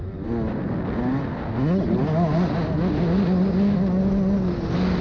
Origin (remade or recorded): recorded